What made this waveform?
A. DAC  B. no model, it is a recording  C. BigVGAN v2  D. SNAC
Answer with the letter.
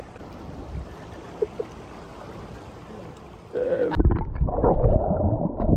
B